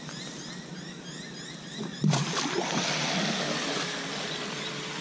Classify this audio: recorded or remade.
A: recorded